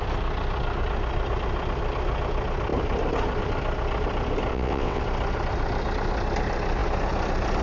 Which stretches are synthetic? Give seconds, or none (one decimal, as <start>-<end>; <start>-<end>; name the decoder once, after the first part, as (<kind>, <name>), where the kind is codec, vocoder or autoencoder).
4.5-5.0 (vocoder, WaveNeXt)